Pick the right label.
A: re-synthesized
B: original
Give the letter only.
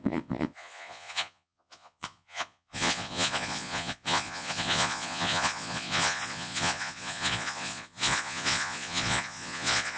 A